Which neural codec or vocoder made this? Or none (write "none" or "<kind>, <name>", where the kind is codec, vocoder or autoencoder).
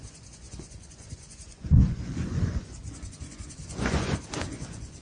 vocoder, Vocos